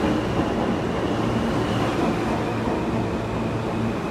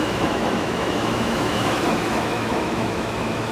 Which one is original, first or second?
first